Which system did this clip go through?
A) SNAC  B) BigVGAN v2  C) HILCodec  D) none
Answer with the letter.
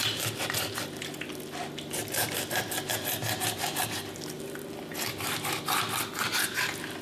D